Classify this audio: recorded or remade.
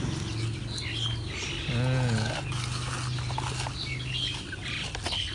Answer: recorded